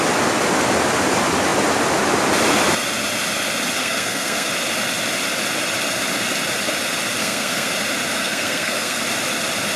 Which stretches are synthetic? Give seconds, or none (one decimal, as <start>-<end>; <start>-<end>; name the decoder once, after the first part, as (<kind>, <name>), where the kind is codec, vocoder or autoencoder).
3.8-4.5 (codec, SNAC); 7.2-7.7; 8.2-9.0